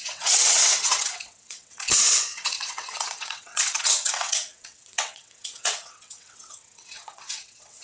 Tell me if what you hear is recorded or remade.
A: remade